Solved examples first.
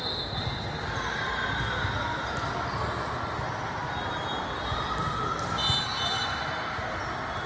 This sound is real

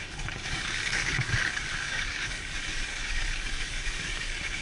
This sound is fake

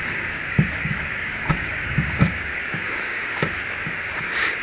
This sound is fake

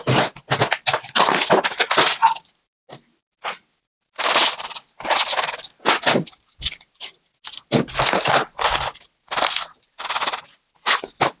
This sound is real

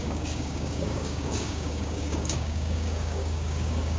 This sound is fake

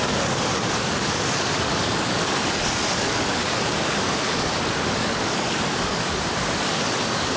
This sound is fake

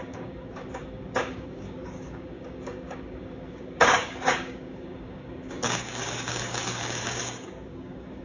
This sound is fake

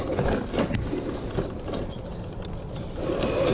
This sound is real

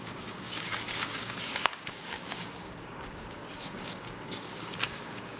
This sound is fake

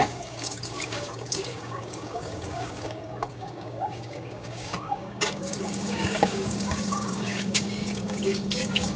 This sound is fake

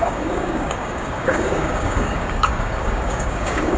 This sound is fake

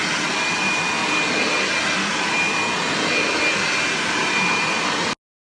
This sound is real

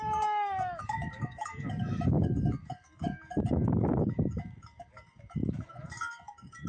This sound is fake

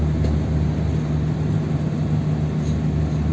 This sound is real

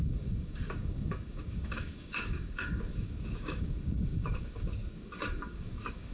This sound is fake